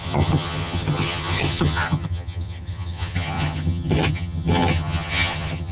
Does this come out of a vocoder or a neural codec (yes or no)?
yes